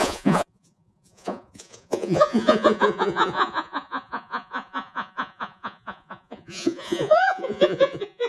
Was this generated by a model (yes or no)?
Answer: yes